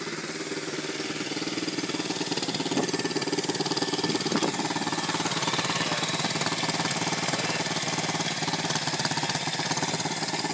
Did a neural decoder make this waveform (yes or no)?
no